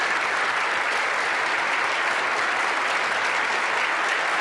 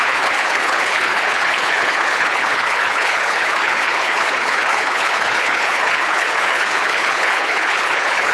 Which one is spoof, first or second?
second